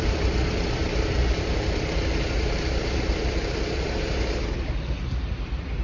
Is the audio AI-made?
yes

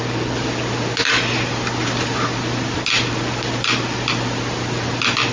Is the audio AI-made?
no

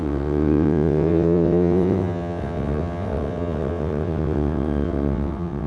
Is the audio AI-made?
yes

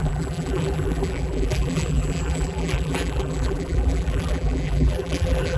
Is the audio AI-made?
yes